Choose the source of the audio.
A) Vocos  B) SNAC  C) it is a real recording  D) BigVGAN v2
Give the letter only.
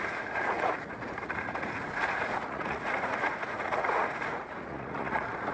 A